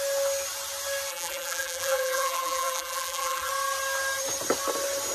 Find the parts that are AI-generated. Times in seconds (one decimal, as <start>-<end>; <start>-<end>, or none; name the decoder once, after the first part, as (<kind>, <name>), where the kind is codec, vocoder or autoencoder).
1.1-3.5 (vocoder, BigVGAN v2)